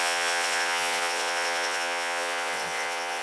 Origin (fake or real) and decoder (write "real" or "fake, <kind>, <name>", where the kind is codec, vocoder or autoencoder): fake, vocoder, WaveNeXt